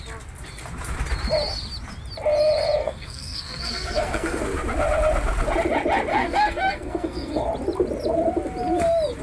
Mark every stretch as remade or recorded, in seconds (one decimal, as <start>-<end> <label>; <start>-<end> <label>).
0.0-2.8 recorded; 2.8-4.4 remade; 4.4-6.1 recorded; 6.1-7.4 remade; 7.4-9.2 recorded